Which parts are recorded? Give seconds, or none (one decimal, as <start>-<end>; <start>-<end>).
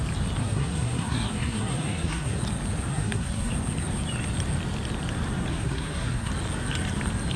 0.0-0.4; 2.4-2.9; 3.5-5.5; 6.3-7.4